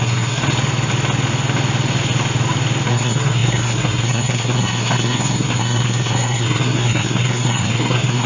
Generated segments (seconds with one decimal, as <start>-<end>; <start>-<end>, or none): 0.0-0.4; 2.9-8.3